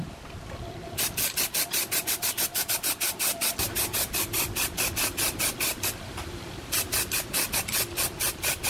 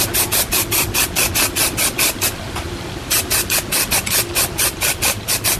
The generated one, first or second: first